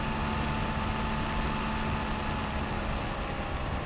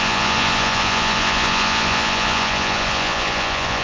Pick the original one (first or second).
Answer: first